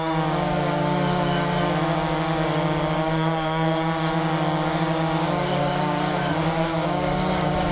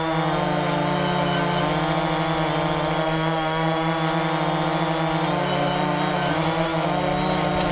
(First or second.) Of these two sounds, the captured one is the second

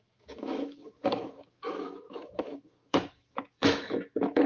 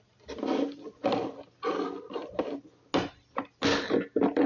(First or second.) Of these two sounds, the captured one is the second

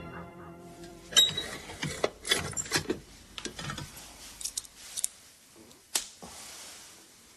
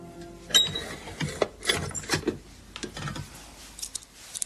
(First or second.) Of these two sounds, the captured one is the second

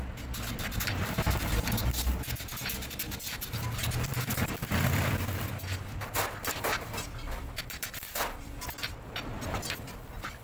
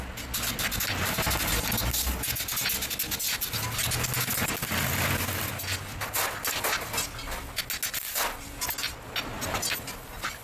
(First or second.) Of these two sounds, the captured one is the second